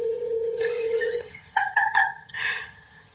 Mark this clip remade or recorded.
remade